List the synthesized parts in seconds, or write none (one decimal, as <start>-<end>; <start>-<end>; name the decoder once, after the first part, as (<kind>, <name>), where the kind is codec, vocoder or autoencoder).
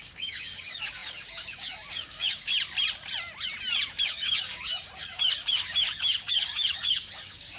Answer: 0.0-2.5 (codec, DAC); 4.0-7.6